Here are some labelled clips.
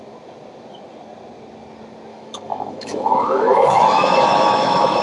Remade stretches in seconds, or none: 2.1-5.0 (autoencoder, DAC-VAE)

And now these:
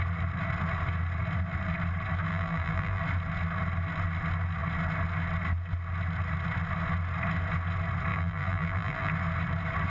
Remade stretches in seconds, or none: 2.3-3.0 (vocoder, BigVGAN v2); 8.1-9.1

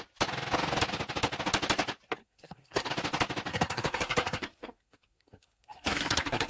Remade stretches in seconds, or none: 2.2-2.9 (codec, SNAC); 3.5-6.5

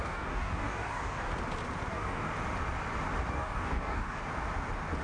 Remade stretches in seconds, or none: 0.0-1.3 (codec, DAC); 1.9-2.3; 3.3-4.2

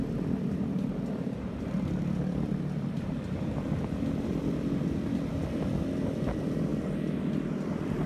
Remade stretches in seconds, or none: none

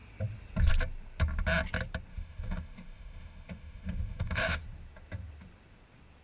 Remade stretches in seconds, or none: 2.1-4.6 (autoencoder, DAC-VAE)

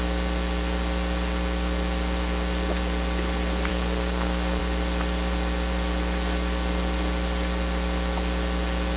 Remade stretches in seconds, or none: 3.7-4.6 (codec, SNAC)

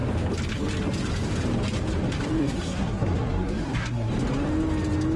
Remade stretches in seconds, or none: 2.4-4.1 (codec, SNAC)